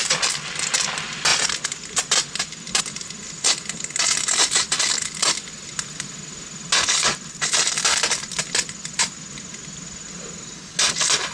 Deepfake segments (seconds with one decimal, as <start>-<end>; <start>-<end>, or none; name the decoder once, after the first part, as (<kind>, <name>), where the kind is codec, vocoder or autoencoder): none